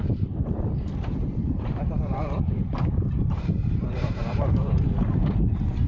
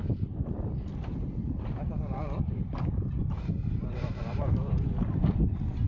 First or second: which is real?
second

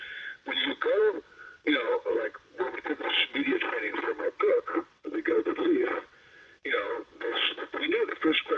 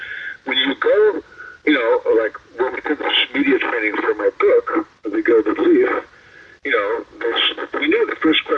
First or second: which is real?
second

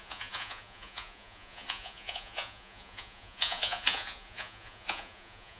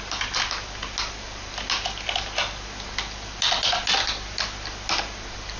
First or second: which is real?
second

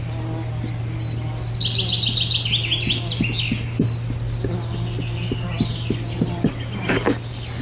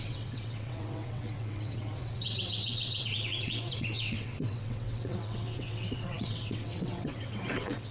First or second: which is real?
first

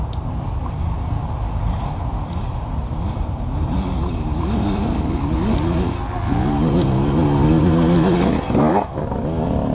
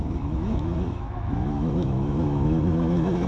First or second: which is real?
first